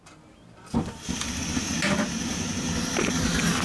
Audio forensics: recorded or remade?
recorded